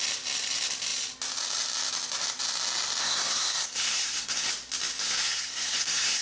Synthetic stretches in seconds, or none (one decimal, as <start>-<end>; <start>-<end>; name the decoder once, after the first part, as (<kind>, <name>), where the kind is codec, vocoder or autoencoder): 3.0-4.5 (codec, SNAC); 5.0-6.2